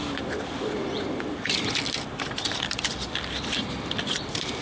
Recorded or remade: remade